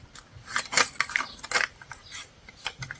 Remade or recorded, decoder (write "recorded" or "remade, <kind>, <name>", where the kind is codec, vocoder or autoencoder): recorded